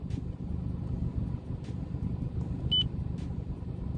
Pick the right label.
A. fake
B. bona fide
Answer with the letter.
B